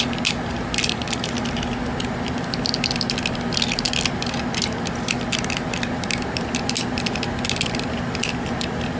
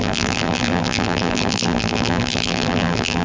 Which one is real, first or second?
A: first